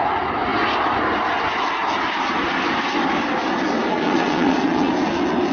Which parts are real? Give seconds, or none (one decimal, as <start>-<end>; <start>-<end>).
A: 0.0-3.9; 4.9-5.5